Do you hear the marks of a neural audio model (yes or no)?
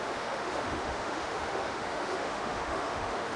yes